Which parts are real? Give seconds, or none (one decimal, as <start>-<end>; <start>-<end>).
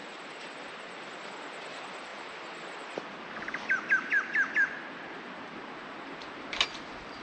1.3-7.2